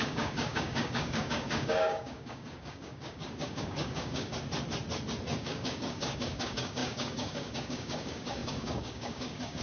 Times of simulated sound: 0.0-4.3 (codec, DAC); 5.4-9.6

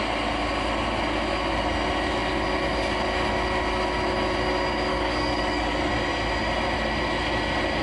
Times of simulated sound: 4.9-5.9 (codec, DAC)